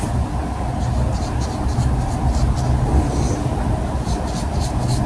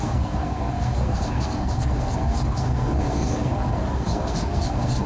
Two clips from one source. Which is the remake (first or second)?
second